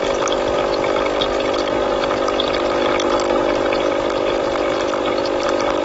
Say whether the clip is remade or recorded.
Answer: recorded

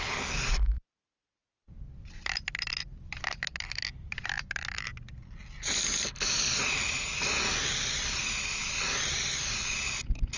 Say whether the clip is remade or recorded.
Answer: recorded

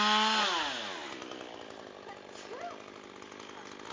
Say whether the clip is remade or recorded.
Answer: recorded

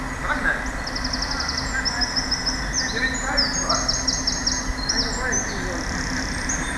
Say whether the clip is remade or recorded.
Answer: recorded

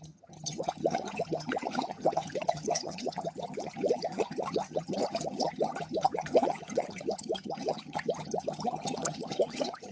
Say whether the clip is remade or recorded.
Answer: remade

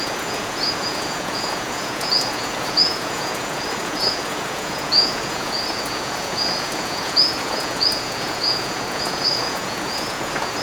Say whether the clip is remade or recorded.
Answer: remade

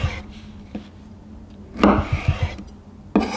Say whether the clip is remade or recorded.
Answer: recorded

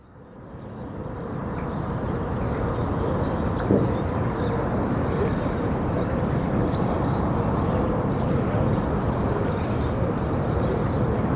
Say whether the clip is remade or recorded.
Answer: recorded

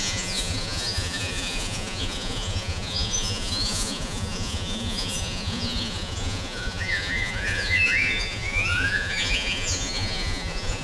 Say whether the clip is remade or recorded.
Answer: remade